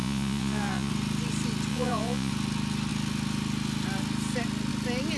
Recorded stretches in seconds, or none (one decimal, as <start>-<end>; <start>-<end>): 0.9-1.7; 2.3-5.2